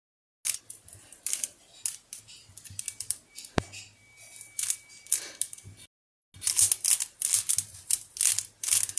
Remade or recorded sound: recorded